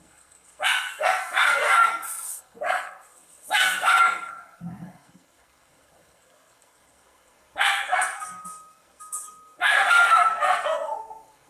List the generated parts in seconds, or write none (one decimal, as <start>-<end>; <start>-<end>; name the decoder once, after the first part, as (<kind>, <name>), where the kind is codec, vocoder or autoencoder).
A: 0.0-11.5 (codec, SNAC)